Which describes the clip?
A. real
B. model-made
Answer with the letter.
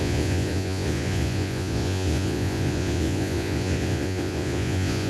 B